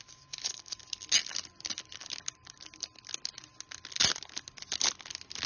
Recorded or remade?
recorded